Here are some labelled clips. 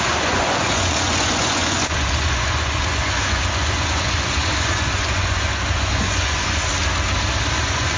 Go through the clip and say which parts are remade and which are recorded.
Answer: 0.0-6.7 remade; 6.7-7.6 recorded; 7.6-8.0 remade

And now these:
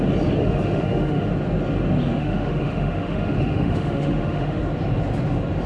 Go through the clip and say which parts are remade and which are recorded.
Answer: 0.0-0.4 recorded; 0.4-1.3 remade; 1.3-2.2 recorded; 2.2-4.6 remade; 4.6-5.7 recorded

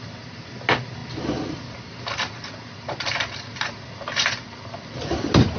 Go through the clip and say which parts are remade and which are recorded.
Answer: 0.0-5.6 recorded